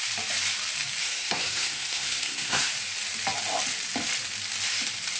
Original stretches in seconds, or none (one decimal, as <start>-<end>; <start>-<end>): 0.0-1.0; 2.7-5.2